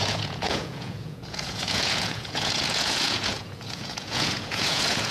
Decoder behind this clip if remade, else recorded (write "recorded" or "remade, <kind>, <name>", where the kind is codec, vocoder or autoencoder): remade, vocoder, Vocos